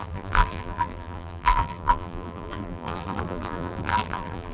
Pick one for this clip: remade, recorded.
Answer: remade